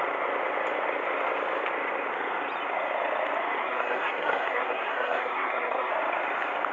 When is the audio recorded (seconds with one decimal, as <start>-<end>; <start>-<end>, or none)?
0.0-3.6; 5.9-6.7